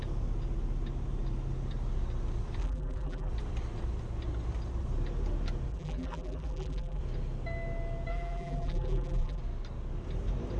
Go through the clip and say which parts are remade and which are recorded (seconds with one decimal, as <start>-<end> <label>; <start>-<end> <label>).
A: 0.0-2.6 recorded; 2.6-3.3 remade; 3.3-5.7 recorded; 5.7-7.0 remade; 7.0-8.1 recorded; 8.1-9.4 remade; 9.4-10.6 recorded